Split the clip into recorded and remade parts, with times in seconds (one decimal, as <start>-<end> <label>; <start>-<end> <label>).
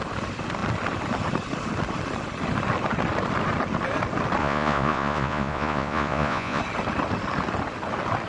0.0-4.4 recorded; 4.4-6.6 remade; 6.6-8.3 recorded